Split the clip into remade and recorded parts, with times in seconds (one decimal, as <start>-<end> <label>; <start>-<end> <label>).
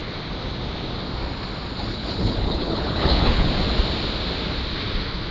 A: 0.0-1.9 recorded; 1.9-3.5 remade; 3.5-5.3 recorded